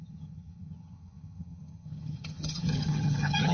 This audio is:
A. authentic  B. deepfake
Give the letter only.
B